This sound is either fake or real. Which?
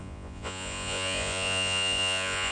fake